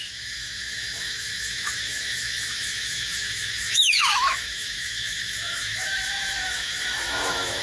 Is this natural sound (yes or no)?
no